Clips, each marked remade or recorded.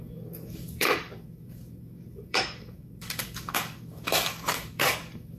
remade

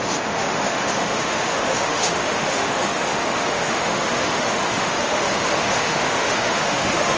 remade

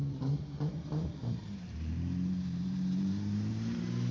remade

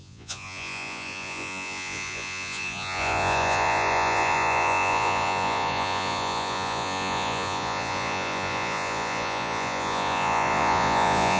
remade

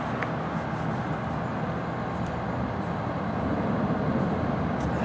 recorded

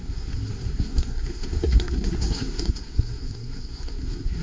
remade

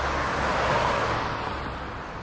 recorded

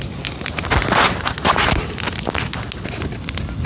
recorded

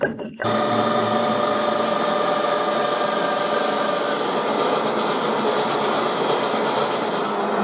recorded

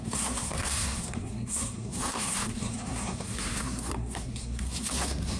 remade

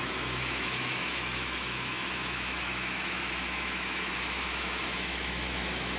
remade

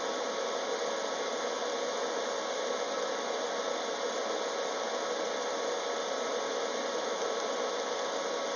recorded